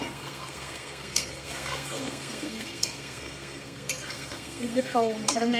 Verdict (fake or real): fake